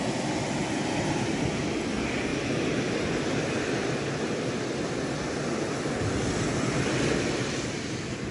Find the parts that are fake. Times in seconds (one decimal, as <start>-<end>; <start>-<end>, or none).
none